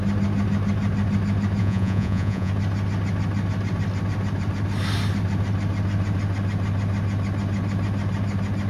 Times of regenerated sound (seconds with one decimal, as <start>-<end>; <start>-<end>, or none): 1.6-2.5